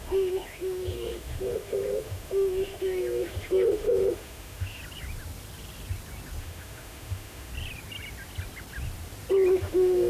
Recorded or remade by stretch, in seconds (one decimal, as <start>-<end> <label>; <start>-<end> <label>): 0.0-4.8 remade; 4.8-6.4 recorded; 6.4-7.5 remade; 7.5-9.5 recorded; 9.5-10.1 remade